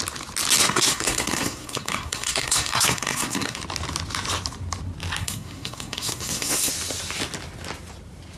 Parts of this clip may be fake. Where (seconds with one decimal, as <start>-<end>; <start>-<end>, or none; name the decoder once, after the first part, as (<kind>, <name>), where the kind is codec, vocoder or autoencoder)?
0.6-3.6 (codec, SNAC); 5.2-6.7